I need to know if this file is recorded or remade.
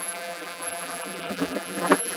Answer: remade